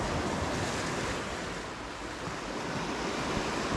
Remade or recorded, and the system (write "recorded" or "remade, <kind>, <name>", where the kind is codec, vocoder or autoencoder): recorded